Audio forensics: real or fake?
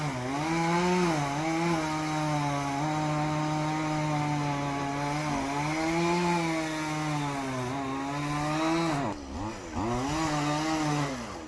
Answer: real